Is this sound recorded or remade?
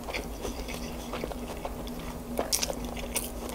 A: recorded